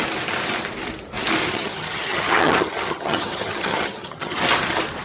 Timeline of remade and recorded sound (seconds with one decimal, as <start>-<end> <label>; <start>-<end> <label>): 0.0-1.4 recorded; 1.4-4.4 remade; 4.4-5.0 recorded

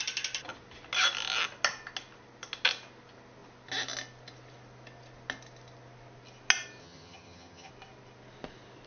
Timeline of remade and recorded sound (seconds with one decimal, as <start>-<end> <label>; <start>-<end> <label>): 0.0-6.8 recorded; 6.8-7.7 remade; 7.7-8.9 recorded

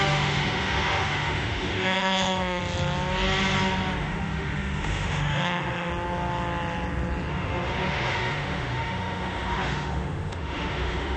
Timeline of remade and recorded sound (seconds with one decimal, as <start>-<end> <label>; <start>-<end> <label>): 0.0-2.6 remade; 2.6-4.0 recorded; 4.0-5.9 remade; 5.9-7.3 recorded; 7.3-11.2 remade